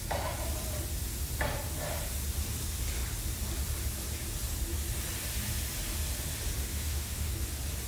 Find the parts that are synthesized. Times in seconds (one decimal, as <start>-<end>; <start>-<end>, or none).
6.6-7.3